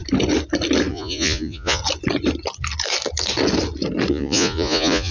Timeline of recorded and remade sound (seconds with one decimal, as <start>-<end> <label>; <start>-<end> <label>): 0.0-0.9 recorded; 0.9-1.8 remade; 1.8-4.1 recorded; 4.1-5.1 remade